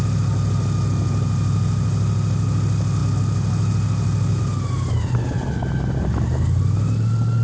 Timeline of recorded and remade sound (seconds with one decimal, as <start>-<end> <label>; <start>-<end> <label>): 0.0-7.4 recorded